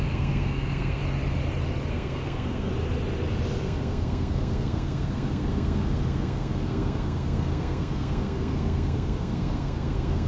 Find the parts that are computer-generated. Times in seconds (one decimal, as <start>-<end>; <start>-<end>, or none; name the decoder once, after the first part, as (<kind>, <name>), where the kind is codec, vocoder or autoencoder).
0.0-1.0 (codec, SNAC); 1.9-2.7; 3.6-10.3